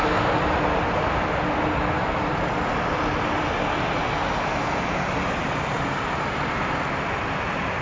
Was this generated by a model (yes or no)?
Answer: no